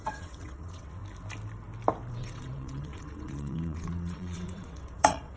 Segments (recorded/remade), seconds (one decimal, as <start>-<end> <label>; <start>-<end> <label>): 0.0-1.0 remade; 1.0-2.1 recorded; 2.1-5.4 remade